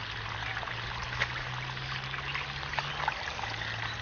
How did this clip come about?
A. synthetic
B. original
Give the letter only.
B